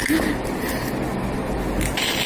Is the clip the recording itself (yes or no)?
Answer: yes